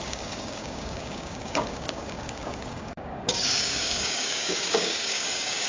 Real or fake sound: fake